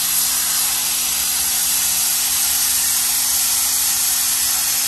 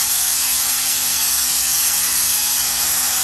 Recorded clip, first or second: first